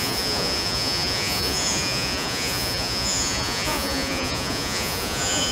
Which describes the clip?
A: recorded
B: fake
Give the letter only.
B